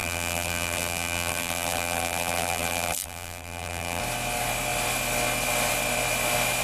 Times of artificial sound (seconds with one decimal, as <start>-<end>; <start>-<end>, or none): 0.0-4.0

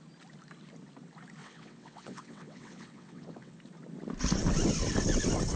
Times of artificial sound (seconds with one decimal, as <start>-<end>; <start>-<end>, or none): 1.4-3.6

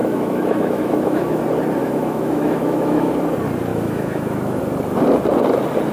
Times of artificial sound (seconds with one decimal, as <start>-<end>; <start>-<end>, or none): 0.0-1.4; 1.8-3.1; 3.7-4.6